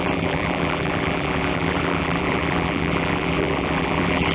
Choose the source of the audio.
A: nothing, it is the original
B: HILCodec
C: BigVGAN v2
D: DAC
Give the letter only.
C